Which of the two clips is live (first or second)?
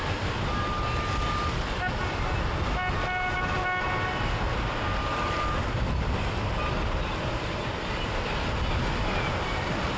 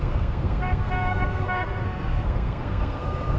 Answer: first